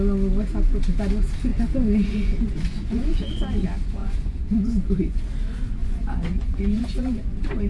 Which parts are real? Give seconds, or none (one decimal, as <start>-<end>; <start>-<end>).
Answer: 0.0-1.5; 3.4-4.0; 5.2-5.8

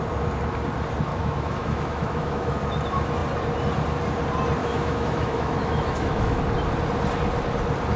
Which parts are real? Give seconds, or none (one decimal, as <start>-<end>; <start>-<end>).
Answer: 0.0-1.1; 2.6-4.6; 6.4-8.0

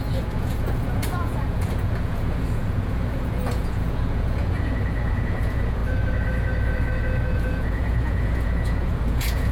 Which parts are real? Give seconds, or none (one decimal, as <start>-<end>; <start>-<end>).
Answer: 5.8-7.0

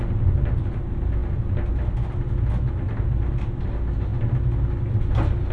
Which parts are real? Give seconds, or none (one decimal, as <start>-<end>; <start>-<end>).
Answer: 0.0-5.5